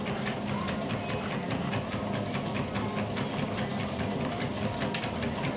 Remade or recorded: recorded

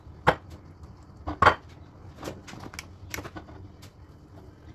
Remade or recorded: recorded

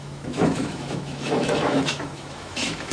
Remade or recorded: remade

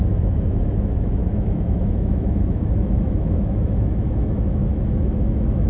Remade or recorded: remade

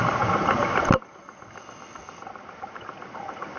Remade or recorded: recorded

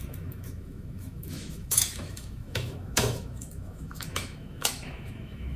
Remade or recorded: remade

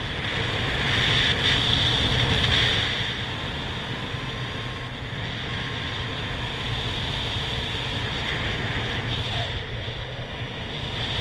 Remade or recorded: recorded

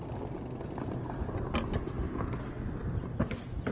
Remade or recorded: recorded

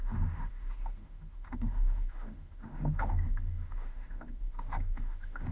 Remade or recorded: remade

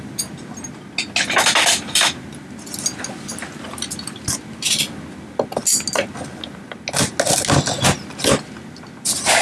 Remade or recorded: recorded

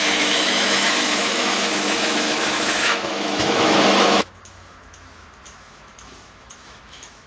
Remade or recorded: remade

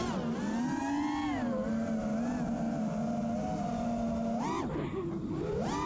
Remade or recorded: recorded